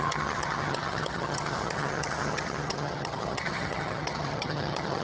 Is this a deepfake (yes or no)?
yes